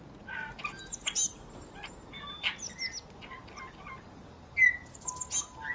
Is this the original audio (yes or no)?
yes